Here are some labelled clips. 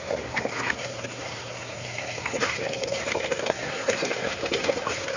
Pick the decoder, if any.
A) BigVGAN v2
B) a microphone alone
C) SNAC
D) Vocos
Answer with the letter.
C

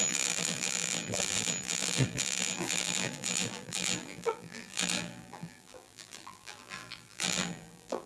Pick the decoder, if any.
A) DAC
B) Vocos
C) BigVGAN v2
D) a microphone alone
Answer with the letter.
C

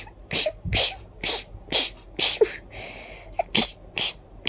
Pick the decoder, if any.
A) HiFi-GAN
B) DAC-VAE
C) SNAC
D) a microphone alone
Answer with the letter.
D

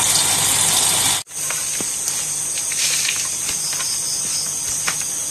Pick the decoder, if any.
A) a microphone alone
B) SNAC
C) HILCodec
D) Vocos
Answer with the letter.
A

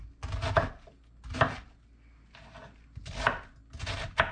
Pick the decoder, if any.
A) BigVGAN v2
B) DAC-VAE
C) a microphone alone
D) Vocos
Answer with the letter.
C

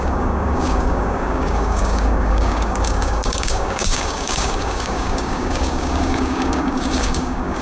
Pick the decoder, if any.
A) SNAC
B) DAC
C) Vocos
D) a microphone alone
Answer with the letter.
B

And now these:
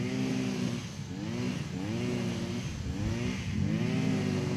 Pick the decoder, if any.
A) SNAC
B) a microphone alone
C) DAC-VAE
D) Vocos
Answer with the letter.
B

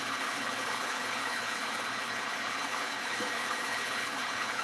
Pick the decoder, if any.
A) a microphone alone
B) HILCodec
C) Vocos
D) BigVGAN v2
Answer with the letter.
B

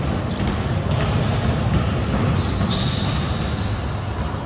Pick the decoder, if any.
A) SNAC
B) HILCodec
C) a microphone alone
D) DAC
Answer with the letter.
C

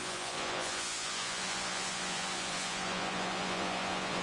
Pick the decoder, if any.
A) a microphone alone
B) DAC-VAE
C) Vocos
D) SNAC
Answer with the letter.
C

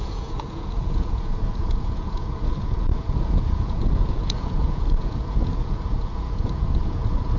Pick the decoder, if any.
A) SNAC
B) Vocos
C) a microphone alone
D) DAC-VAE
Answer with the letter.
B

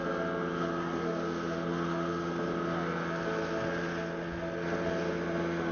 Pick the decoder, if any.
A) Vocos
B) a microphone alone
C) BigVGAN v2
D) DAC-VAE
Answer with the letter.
B